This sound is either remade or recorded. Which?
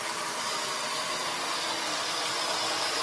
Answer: recorded